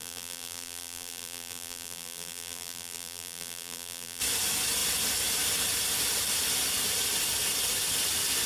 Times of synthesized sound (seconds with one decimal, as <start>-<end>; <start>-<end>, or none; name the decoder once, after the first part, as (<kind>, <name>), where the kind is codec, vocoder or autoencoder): 0.0-4.2 (vocoder, BigVGAN v2)